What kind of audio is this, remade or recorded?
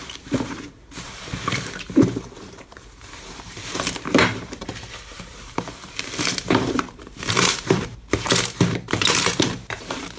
remade